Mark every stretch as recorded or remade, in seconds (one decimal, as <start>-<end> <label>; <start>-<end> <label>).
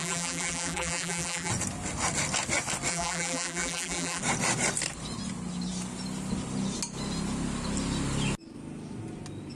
0.0-1.5 remade; 1.5-2.9 recorded; 2.9-4.2 remade; 4.2-9.6 recorded